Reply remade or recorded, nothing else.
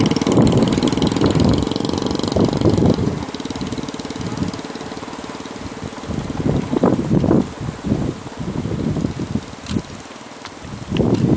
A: recorded